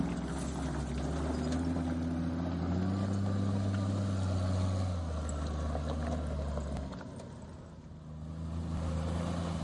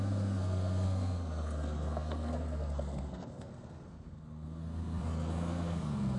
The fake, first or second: second